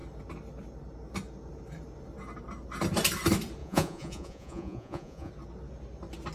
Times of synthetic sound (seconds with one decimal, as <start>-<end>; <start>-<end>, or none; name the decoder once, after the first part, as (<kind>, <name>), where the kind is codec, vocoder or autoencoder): 3.6-5.3 (vocoder, Vocos)